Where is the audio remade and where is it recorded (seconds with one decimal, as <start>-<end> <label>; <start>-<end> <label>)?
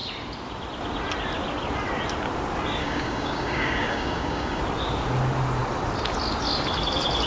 0.0-2.8 recorded; 2.8-4.6 remade; 4.6-7.3 recorded